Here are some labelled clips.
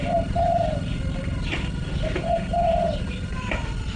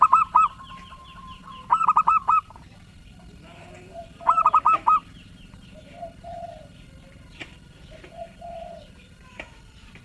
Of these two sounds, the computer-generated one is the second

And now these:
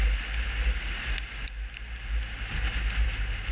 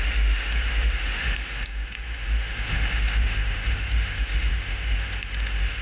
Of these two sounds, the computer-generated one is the second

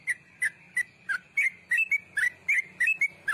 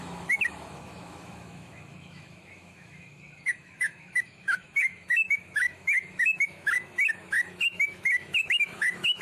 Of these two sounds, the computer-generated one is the second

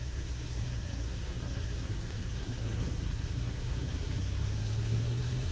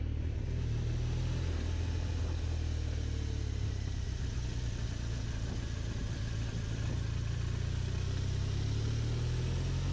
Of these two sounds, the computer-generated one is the first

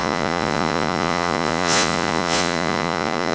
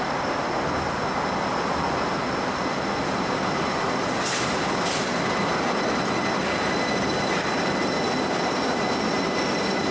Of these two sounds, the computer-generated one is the first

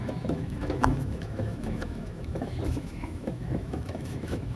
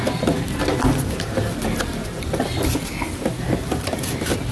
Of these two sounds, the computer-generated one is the first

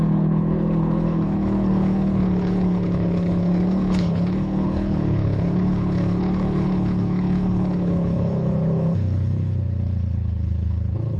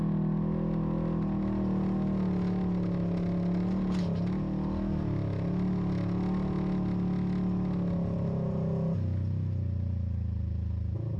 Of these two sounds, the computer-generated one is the first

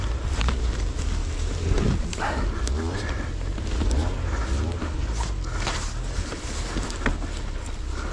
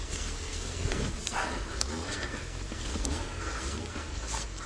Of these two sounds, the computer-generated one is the second